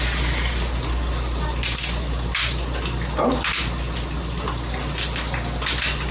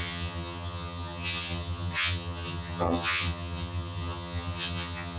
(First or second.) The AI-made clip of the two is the second